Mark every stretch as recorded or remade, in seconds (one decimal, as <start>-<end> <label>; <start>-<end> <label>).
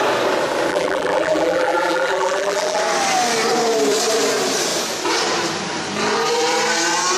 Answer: 0.0-0.7 recorded; 0.7-2.8 remade; 2.8-7.2 recorded